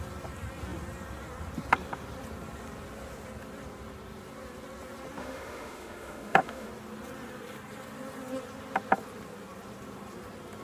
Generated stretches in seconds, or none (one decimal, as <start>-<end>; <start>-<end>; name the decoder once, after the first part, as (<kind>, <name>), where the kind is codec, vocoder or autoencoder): 5.2-6.7 (autoencoder, DAC-VAE)